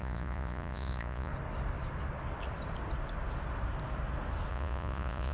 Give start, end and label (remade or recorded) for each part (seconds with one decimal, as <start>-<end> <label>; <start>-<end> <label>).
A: 0.0-1.3 remade; 1.3-4.5 recorded; 4.5-5.3 remade